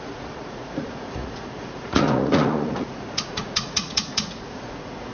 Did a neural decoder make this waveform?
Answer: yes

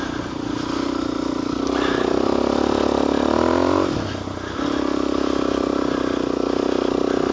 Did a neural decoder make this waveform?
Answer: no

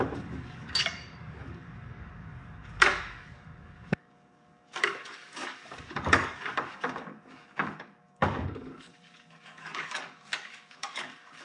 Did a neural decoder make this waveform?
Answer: yes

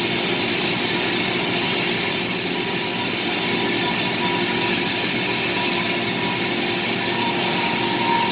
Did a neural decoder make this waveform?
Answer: no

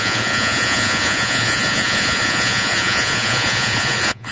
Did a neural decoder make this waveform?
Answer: yes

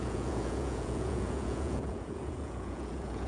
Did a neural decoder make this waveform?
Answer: yes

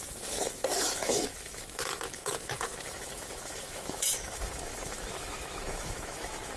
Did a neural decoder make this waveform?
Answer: yes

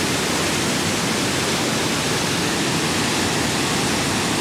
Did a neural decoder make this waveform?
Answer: no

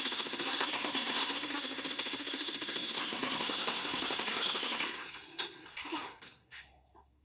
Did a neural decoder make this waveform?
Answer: yes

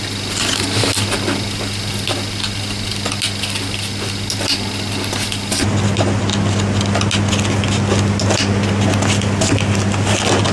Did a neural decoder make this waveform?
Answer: no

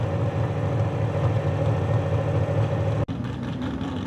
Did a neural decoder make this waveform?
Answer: no